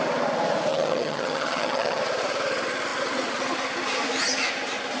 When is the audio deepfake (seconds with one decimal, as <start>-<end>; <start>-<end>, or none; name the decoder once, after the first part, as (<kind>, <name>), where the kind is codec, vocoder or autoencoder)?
0.7-2.0 (vocoder, HiFi-GAN)